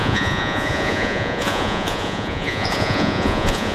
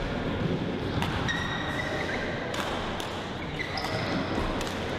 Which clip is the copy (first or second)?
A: first